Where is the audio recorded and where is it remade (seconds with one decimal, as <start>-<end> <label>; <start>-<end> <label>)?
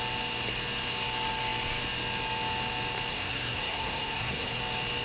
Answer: 0.0-3.1 recorded; 3.1-4.6 remade; 4.6-5.0 recorded